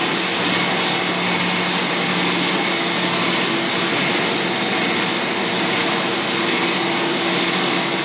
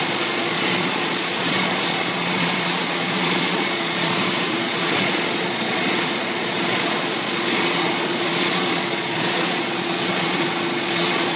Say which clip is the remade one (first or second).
second